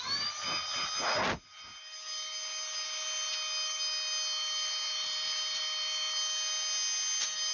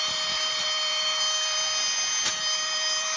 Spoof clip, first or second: second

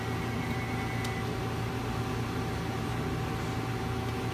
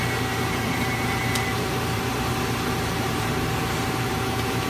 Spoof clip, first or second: second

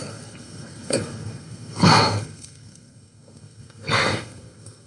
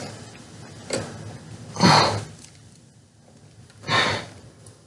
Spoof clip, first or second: first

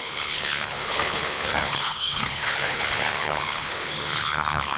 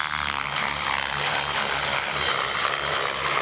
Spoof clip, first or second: first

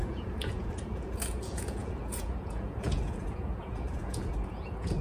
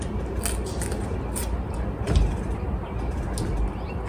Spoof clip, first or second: first